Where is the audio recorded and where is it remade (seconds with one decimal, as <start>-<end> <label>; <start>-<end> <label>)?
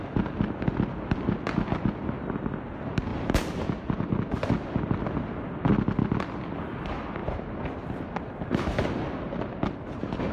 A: 0.0-10.3 recorded